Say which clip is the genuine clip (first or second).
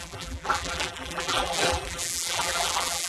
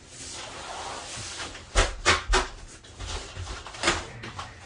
second